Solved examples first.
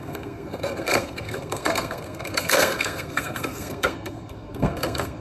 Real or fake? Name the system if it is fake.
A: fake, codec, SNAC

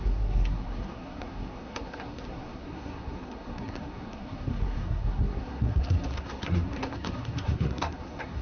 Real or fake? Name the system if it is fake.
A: fake, codec, SNAC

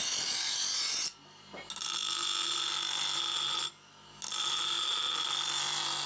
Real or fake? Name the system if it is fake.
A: real